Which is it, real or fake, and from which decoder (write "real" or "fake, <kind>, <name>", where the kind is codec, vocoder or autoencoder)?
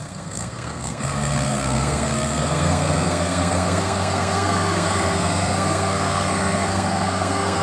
fake, codec, SNAC